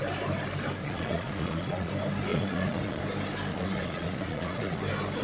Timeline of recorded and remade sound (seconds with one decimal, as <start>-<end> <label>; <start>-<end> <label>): 0.0-0.8 recorded; 0.8-1.9 remade; 1.9-2.3 recorded; 2.3-3.0 remade; 3.0-3.5 recorded; 3.5-4.8 remade; 4.8-5.2 recorded